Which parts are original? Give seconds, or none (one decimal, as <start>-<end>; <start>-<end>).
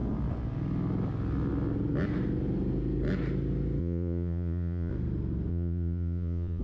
0.0-3.8; 4.9-5.5